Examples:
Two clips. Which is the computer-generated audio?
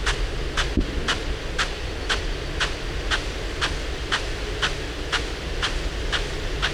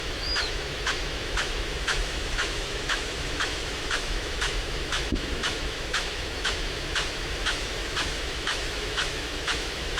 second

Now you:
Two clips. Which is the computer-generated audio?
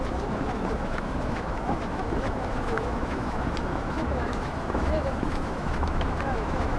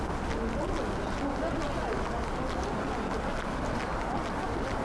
first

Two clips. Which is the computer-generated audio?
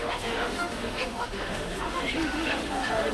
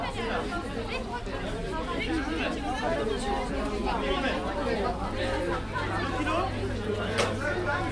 first